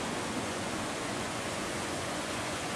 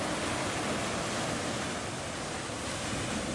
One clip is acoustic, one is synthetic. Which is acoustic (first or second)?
second